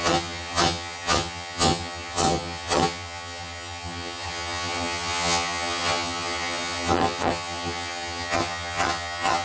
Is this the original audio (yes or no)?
no